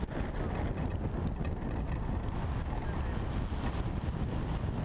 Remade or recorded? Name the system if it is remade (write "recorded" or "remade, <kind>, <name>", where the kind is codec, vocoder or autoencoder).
recorded